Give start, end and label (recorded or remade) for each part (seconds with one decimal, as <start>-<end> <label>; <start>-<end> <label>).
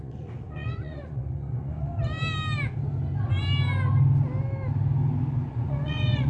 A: 0.0-1.9 remade; 1.9-5.5 recorded; 5.5-6.3 remade